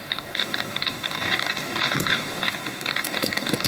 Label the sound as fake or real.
fake